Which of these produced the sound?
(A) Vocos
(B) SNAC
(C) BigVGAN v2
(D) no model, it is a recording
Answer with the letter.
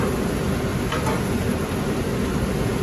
D